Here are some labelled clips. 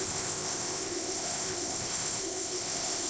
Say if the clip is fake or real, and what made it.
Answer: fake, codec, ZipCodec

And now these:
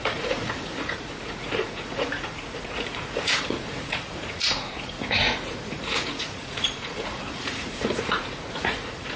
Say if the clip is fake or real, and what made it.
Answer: fake, vocoder, Vocos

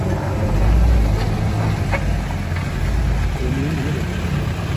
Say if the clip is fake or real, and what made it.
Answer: real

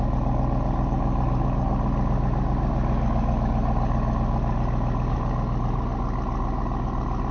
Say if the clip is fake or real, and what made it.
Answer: real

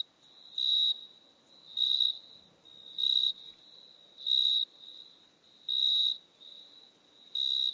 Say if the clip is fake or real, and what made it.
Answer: real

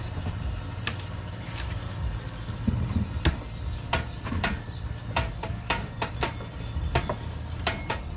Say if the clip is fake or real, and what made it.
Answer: real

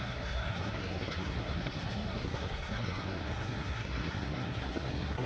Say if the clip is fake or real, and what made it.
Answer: fake, codec, SNAC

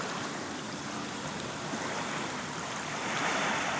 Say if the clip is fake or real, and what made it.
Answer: fake, vocoder, BigVGAN v2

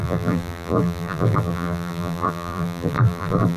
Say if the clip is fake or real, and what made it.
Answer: fake, vocoder, BigVGAN v2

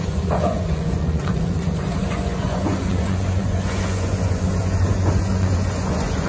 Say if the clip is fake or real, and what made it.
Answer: fake, vocoder, Vocos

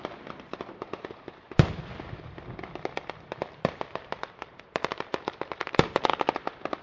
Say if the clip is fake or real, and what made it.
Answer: fake, vocoder, BigVGAN v2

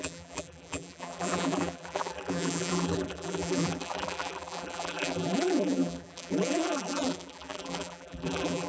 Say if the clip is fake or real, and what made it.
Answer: fake, vocoder, BigVGAN v2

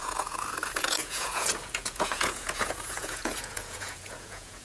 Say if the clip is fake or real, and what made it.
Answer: fake, vocoder, Vocos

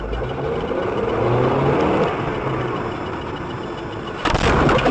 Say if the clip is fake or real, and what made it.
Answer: real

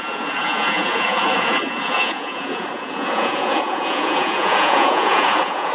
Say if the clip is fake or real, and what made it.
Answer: fake, vocoder, Vocos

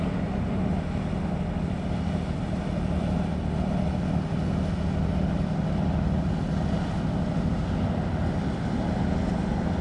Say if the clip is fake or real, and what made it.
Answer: real